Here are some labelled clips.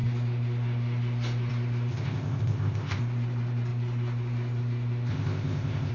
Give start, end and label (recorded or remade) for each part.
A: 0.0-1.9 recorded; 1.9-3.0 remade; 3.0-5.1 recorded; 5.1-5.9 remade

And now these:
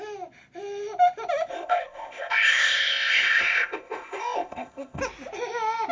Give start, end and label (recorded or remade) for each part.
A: 0.0-1.5 recorded; 1.5-5.0 remade; 5.0-5.9 recorded

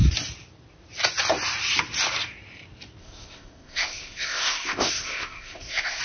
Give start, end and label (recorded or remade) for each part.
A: 0.0-3.0 recorded; 3.0-6.0 remade

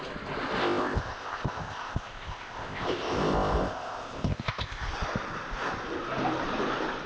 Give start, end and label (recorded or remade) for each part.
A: 0.0-0.6 recorded; 0.6-4.9 remade; 4.9-7.1 recorded

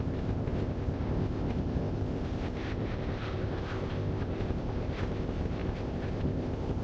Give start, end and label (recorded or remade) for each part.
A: 0.0-6.8 remade